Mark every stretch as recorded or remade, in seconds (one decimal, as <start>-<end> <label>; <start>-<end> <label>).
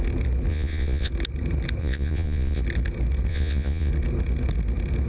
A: 0.0-0.5 recorded; 0.5-1.1 remade; 1.1-1.8 recorded; 1.8-2.6 remade; 2.6-3.3 recorded; 3.3-3.9 remade; 3.9-5.1 recorded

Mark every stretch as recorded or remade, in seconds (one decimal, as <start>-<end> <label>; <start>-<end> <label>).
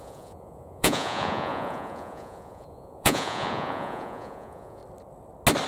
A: 0.0-4.8 remade; 4.8-5.7 recorded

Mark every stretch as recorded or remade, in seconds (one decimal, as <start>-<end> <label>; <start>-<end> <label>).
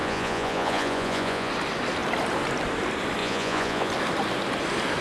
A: 0.0-1.5 remade; 1.5-3.2 recorded; 3.2-3.9 remade; 3.9-5.0 recorded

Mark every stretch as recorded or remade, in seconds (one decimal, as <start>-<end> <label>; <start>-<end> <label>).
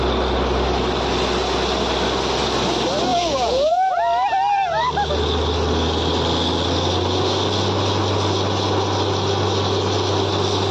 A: 0.0-3.1 recorded; 3.1-3.9 remade; 3.9-10.7 recorded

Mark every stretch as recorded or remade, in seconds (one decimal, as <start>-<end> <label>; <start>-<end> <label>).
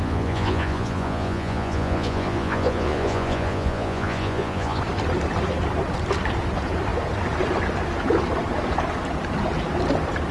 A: 0.0-4.8 remade; 4.8-10.3 recorded